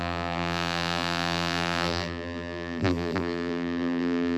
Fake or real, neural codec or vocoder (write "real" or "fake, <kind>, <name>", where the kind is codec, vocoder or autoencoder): fake, vocoder, BigVGAN v2